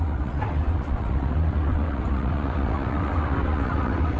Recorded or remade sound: remade